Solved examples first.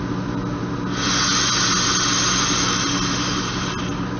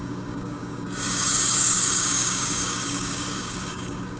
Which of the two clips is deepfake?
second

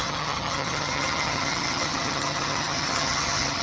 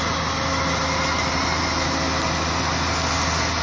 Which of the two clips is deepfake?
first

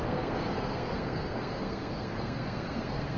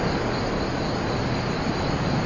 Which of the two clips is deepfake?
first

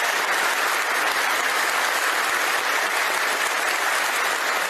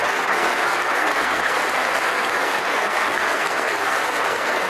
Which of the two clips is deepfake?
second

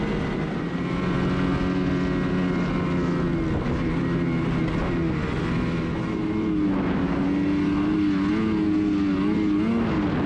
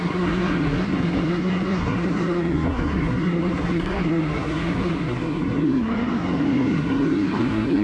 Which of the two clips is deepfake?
second